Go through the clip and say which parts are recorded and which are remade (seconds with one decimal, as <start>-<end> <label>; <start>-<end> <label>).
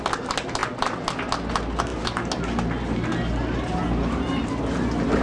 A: 0.0-5.2 recorded